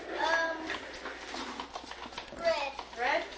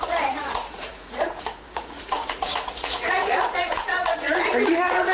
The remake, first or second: second